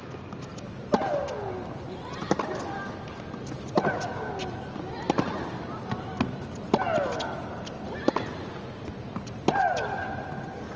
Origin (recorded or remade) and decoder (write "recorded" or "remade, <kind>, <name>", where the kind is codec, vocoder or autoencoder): recorded